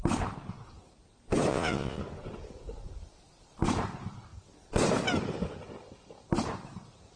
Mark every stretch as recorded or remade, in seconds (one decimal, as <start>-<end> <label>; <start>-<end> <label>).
0.0-1.5 recorded; 1.5-2.0 remade; 2.0-7.2 recorded